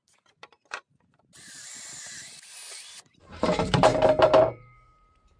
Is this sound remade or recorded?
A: remade